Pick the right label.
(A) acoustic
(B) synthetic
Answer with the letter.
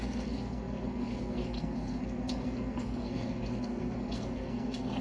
B